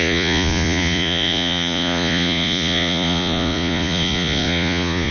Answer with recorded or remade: remade